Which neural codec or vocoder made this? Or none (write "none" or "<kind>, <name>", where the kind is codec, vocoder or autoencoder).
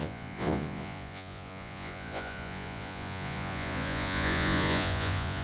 vocoder, Vocos